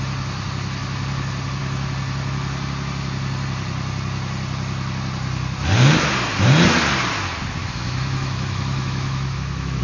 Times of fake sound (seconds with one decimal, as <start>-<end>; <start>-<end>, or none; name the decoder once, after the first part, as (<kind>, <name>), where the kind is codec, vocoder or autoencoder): 7.6-9.8 (autoencoder, DAC-VAE)